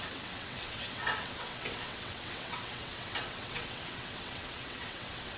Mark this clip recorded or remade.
remade